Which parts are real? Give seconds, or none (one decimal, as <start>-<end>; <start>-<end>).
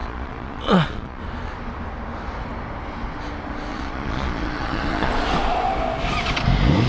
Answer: 1.2-3.7; 5.1-6.9